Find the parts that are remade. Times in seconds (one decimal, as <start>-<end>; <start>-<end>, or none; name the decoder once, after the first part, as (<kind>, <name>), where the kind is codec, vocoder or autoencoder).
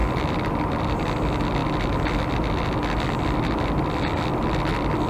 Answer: none